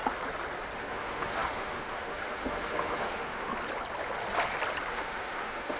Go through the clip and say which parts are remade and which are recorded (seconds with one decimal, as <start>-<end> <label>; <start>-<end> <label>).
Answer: 0.0-0.8 recorded; 0.8-3.5 remade; 3.5-4.9 recorded; 4.9-5.8 remade